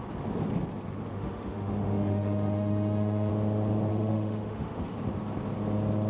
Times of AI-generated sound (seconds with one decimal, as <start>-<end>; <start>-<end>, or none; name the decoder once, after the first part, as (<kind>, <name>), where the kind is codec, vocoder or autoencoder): 1.1-3.3 (autoencoder, DAC-VAE); 3.9-4.8